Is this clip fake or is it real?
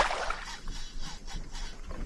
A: real